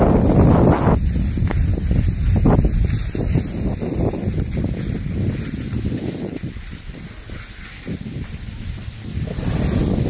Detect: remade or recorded recorded